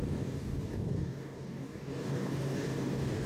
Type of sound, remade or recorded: remade